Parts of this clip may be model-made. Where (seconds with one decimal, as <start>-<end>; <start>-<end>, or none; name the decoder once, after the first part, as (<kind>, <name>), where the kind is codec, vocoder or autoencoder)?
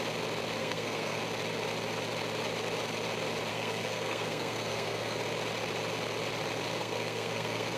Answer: 0.6-1.2 (codec, SNAC); 3.5-5.2; 6.8-7.8